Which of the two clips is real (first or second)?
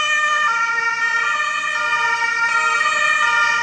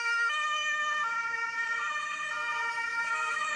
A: first